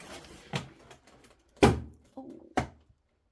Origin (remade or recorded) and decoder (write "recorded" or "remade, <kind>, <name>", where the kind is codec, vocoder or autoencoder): remade, vocoder, BigVGAN v2